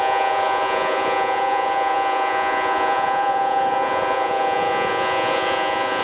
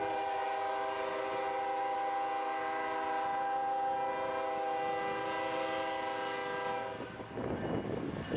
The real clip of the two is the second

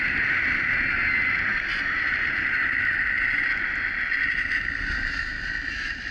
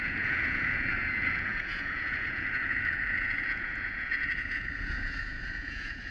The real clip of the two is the first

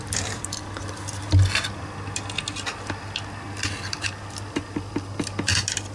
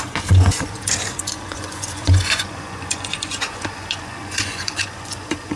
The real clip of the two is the first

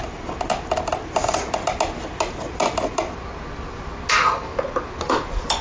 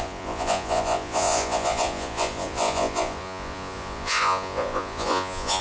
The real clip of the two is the first